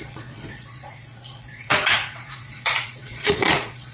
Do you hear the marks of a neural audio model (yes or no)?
yes